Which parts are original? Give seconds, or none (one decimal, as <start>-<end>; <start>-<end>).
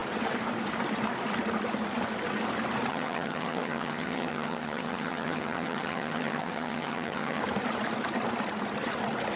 0.0-2.9; 7.4-9.4